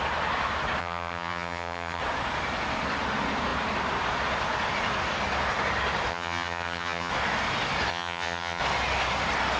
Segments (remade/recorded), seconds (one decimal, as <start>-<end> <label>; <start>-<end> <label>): 0.0-0.8 recorded; 0.8-2.0 remade; 2.0-6.1 recorded; 6.1-7.1 remade; 7.1-7.9 recorded; 7.9-8.6 remade; 8.6-9.6 recorded